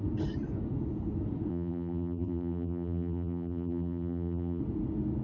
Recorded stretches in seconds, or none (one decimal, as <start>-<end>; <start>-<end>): 0.0-1.5; 4.6-5.2